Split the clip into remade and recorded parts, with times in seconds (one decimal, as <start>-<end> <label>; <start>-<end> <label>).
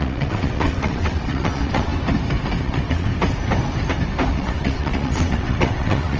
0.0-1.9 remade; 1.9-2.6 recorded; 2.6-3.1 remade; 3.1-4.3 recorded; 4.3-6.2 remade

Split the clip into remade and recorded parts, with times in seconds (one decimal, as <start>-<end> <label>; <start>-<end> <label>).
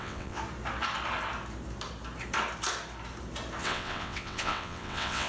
0.0-0.4 remade; 0.4-3.6 recorded; 3.6-5.3 remade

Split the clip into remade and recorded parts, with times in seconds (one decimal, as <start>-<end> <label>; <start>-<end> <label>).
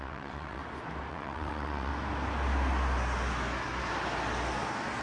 0.0-0.6 remade; 0.6-1.1 recorded; 1.1-1.9 remade; 1.9-5.0 recorded